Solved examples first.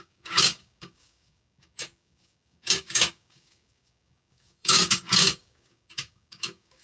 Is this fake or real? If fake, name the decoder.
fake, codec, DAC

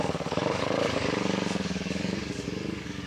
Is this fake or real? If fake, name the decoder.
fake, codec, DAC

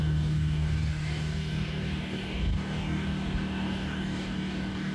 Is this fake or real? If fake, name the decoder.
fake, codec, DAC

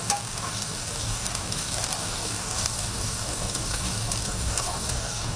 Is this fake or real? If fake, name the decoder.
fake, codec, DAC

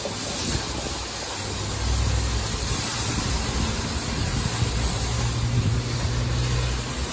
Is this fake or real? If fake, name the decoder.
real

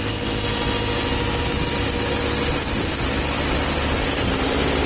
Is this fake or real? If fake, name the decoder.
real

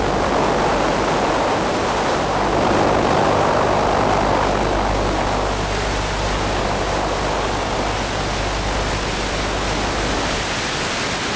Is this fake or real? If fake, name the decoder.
real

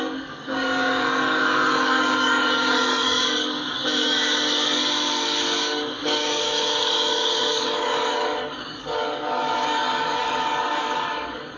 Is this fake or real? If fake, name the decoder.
fake, codec, DAC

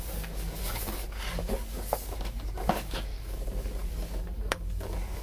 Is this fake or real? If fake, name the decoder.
fake, codec, DAC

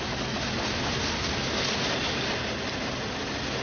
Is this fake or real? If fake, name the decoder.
real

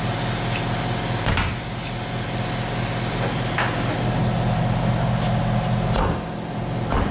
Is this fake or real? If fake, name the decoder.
real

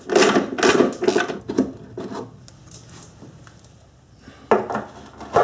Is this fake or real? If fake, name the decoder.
real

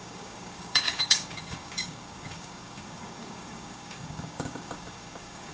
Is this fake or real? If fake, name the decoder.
fake, codec, DAC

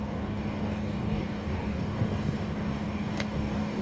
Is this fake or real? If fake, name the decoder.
fake, codec, DAC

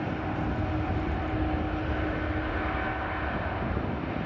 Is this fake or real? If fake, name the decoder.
real